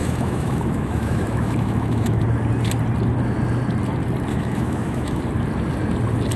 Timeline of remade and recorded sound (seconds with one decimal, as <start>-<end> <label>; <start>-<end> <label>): 0.0-2.2 remade; 2.2-4.3 recorded; 4.3-5.2 remade; 5.2-6.4 recorded